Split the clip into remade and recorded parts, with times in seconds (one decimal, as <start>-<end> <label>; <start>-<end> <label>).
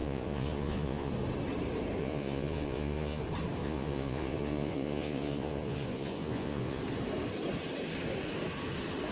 0.0-1.1 remade; 1.1-2.0 recorded; 2.0-3.2 remade; 3.2-3.6 recorded; 3.6-6.8 remade; 6.8-9.1 recorded